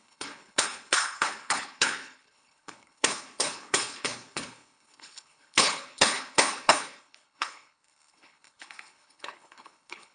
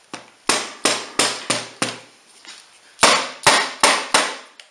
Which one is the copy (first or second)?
first